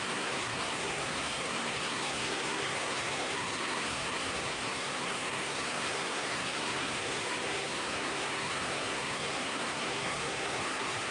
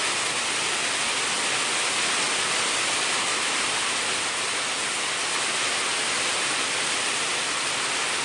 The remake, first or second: first